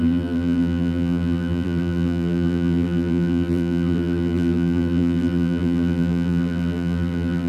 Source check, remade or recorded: remade